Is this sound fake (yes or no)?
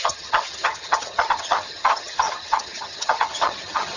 yes